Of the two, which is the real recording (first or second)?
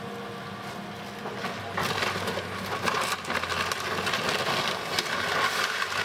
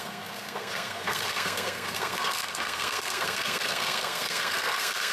first